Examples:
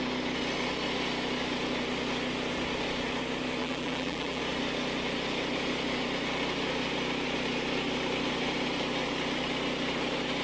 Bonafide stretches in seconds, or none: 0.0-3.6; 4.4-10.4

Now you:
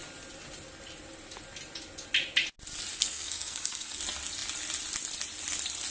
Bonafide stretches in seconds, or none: 0.0-2.9; 4.0-5.9